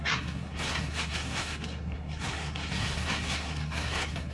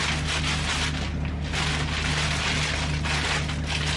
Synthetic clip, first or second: first